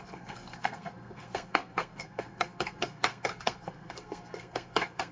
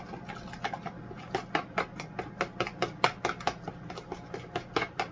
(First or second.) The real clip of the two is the second